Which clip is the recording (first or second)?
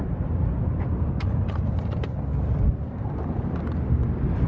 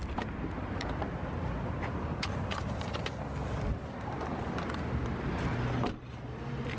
second